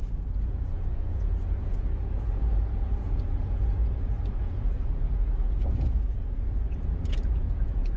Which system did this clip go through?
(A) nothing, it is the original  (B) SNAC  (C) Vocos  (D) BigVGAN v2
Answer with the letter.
C